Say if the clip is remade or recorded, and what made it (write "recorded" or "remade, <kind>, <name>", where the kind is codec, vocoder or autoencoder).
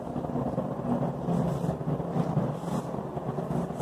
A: recorded